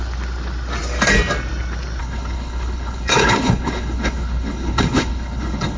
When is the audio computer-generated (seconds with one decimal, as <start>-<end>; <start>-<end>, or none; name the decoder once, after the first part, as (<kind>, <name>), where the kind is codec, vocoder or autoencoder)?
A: 2.0-5.8 (codec, HILCodec)